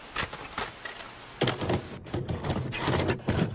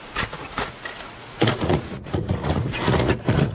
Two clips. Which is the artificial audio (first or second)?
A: second